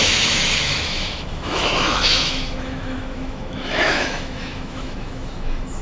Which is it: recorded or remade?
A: remade